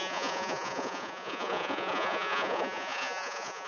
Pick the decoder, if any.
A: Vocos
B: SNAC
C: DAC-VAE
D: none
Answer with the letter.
A